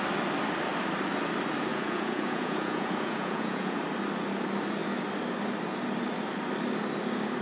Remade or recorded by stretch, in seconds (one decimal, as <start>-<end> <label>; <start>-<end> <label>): 0.0-1.7 recorded; 1.7-3.8 remade; 3.8-7.4 recorded